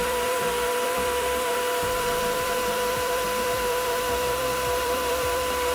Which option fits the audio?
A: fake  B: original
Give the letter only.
A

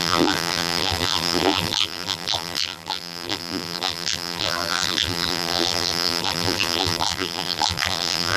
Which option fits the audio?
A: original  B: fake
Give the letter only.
B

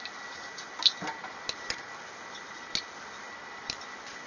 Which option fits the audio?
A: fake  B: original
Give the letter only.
B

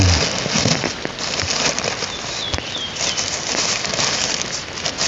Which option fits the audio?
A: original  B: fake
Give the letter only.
A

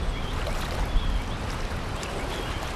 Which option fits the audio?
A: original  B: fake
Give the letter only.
A